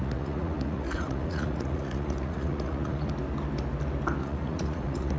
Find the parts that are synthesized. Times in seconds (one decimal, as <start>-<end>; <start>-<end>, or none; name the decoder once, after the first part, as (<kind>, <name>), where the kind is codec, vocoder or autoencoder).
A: 0.0-3.1 (vocoder, Vocos); 4.2-5.2